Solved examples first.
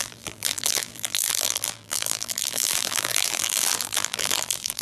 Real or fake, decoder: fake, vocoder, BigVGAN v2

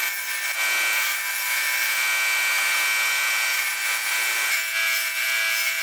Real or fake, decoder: real